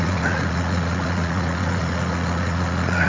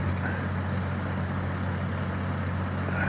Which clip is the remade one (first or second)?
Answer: first